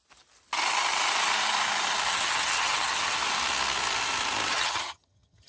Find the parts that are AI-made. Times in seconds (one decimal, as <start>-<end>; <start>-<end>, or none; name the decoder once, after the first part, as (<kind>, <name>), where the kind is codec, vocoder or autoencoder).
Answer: 2.1-3.2 (vocoder, HiFi-GAN); 4.5-5.5